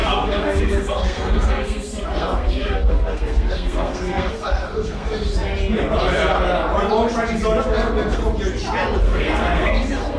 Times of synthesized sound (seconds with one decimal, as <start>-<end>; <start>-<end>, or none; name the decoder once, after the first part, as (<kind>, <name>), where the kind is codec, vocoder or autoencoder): 0.0-5.3 (codec, SNAC); 7.6-8.2; 9.0-10.2